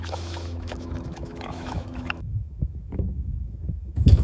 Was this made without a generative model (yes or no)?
no